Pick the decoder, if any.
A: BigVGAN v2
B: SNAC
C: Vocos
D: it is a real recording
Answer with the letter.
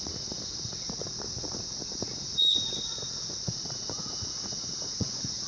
C